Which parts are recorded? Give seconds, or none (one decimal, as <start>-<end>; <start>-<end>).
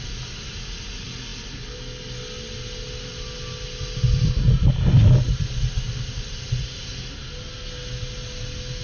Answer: 0.0-8.8